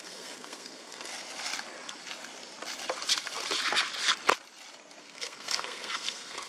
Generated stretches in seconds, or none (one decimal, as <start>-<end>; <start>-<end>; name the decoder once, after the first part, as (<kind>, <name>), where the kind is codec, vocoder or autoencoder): 0.0-1.1 (codec, SNAC); 5.0-6.5